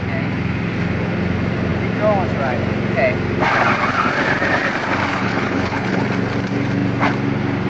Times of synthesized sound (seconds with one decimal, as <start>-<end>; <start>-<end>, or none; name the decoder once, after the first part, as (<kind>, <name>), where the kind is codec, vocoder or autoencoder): 5.1-6.0 (codec, HILCodec)